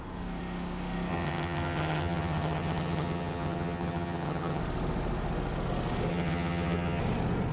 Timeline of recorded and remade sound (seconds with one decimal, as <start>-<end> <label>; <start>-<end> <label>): 0.0-1.1 recorded; 1.1-4.6 remade; 4.6-6.1 recorded; 6.1-7.0 remade; 7.0-7.5 recorded